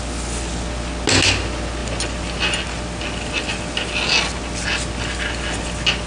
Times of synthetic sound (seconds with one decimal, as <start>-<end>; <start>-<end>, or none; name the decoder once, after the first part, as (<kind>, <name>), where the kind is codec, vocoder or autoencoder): none